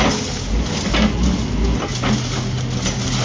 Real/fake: real